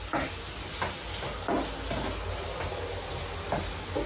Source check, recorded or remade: recorded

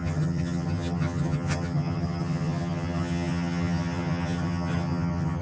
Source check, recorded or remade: remade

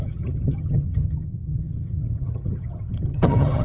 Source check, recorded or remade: remade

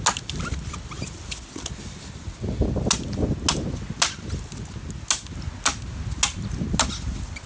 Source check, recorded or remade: recorded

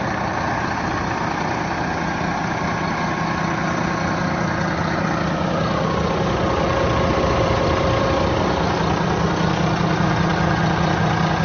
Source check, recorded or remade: recorded